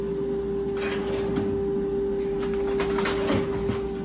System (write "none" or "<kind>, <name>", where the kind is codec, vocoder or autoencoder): none